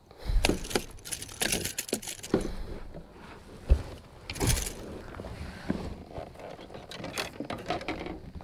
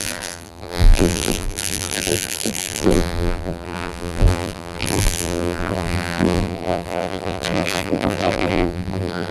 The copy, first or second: second